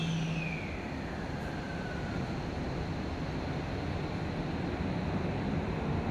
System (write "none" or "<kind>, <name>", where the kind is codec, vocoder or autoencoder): none